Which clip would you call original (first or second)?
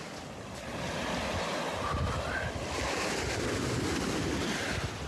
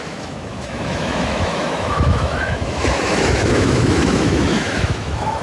first